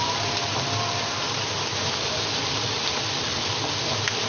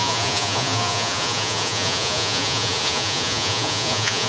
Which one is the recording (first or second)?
first